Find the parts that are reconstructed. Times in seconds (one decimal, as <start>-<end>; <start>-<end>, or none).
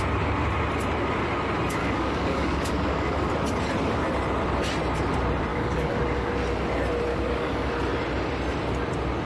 1.8-3.3; 5.5-6.3; 7.1-7.7